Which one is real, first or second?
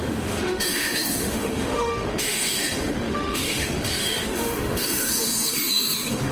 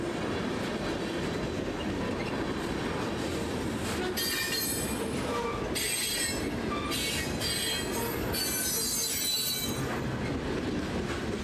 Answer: second